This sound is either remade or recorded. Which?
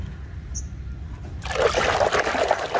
recorded